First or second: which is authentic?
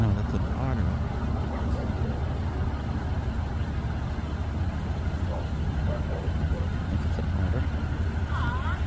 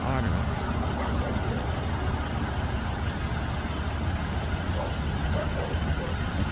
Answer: first